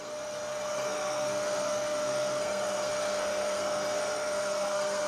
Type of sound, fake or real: fake